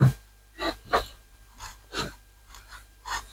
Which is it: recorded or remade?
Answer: remade